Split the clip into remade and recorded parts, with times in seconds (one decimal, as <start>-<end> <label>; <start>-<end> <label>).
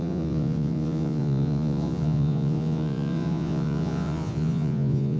0.0-5.2 remade